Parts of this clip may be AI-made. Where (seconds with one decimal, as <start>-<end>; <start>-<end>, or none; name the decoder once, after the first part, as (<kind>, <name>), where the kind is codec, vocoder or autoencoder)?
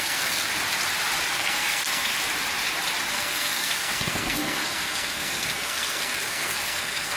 0.0-0.5 (codec, SNAC); 1.3-2.1; 3.1-7.2